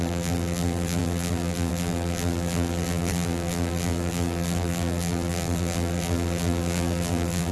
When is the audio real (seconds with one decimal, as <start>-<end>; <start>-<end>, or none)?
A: none